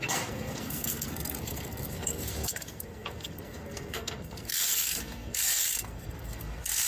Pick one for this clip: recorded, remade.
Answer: remade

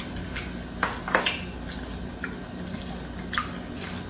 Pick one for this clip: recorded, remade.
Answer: recorded